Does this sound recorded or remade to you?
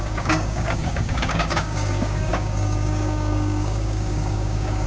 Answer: remade